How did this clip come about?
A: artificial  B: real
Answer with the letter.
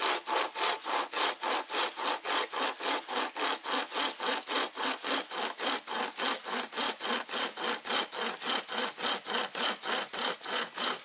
B